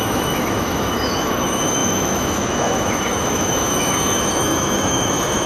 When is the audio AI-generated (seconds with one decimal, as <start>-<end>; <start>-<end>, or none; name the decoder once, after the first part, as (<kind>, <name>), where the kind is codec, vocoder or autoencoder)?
0.0-5.5 (autoencoder, DAC-VAE)